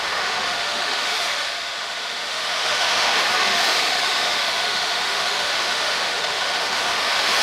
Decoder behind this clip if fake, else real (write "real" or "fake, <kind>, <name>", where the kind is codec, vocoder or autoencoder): fake, autoencoder, DAC-VAE